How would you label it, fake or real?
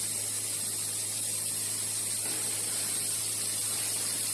real